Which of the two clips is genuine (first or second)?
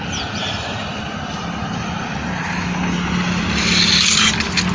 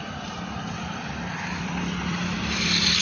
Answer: first